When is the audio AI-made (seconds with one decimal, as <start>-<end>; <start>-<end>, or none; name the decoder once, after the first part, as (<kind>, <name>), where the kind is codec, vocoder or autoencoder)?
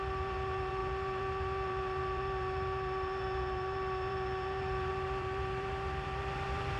0.0-6.8 (vocoder, BigVGAN v2)